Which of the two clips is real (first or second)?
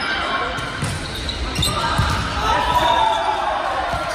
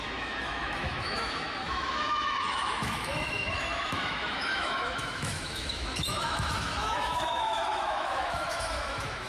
first